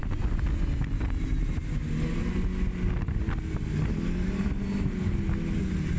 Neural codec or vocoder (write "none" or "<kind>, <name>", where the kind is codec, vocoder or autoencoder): none